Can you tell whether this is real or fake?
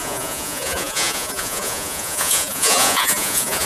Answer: fake